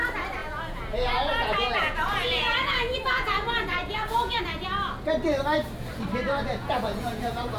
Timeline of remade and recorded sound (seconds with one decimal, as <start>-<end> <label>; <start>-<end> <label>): 0.0-0.4 recorded; 0.4-4.4 remade; 4.4-6.3 recorded; 6.3-7.6 remade